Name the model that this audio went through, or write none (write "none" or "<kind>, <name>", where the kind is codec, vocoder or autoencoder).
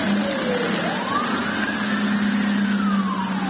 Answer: none